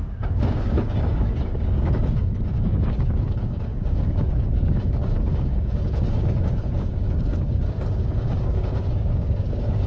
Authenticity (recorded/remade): remade